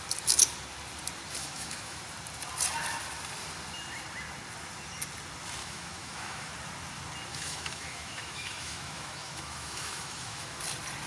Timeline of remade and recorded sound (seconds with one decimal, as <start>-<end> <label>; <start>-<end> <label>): 0.0-1.4 recorded; 1.4-2.0 remade; 2.0-5.6 recorded; 5.6-6.5 remade; 6.5-7.3 recorded; 7.3-10.6 remade; 10.6-11.1 recorded